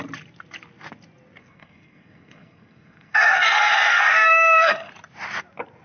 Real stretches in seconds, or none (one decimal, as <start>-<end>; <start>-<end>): 0.0-1.4; 4.9-5.8